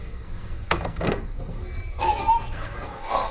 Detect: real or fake fake